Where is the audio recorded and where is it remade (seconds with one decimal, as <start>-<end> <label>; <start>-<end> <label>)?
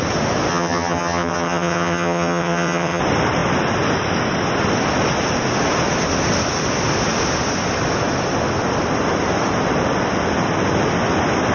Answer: 0.0-0.5 recorded; 0.5-3.0 remade; 3.0-11.5 recorded